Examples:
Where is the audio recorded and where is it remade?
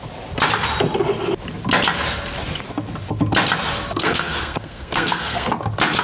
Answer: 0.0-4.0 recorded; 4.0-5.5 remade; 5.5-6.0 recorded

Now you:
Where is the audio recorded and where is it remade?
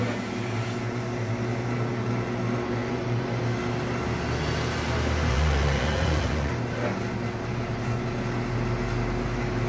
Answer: 0.0-2.8 recorded; 2.8-3.4 remade; 3.4-5.3 recorded; 5.3-6.5 remade; 6.5-9.7 recorded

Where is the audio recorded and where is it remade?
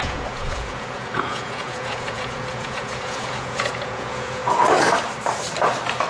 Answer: 0.0-4.4 remade; 4.4-6.1 recorded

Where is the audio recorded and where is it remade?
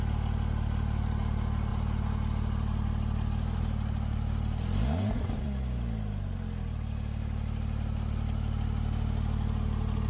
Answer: 0.0-10.1 recorded